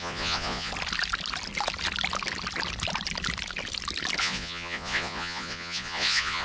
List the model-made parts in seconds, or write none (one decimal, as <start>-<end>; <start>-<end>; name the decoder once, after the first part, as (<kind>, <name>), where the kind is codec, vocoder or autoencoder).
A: 0.0-0.7 (vocoder, Vocos); 4.2-6.4

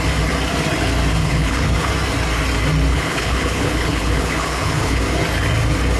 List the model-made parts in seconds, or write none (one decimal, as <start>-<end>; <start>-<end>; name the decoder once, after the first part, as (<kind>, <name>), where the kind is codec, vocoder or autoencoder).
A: 1.2-1.9 (codec, HILCodec); 2.9-5.0

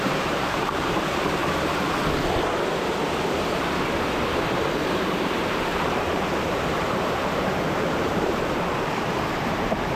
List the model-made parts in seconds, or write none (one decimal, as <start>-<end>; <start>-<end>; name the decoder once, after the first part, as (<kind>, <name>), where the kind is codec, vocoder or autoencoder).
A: 0.0-1.4 (vocoder, BigVGAN v2); 4.3-10.0

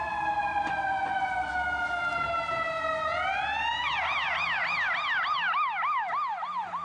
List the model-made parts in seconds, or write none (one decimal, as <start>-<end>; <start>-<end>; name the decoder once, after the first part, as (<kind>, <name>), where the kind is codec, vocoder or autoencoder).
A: 0.5-1.5 (vocoder, Vocos)